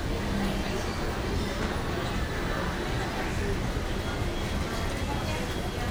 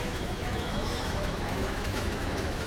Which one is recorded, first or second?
first